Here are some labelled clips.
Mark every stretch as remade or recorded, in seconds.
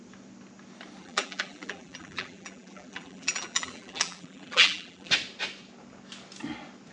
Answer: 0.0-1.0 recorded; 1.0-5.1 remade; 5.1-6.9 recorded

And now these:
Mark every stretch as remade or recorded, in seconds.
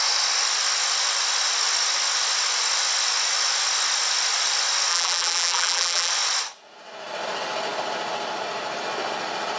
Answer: 0.0-4.9 recorded; 4.9-6.1 remade; 6.1-9.6 recorded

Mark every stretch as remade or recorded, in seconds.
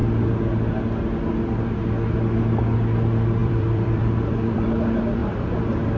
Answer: 0.0-3.4 recorded; 3.4-4.8 remade; 4.8-5.2 recorded; 5.2-6.0 remade